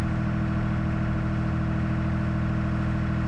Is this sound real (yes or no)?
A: yes